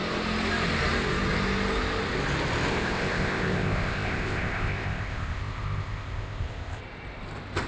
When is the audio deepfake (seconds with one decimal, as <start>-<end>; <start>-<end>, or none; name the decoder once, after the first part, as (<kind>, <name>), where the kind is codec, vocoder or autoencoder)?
2.7-6.8 (codec, ZipCodec)